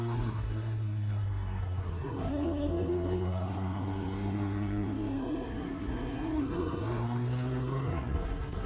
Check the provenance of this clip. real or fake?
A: fake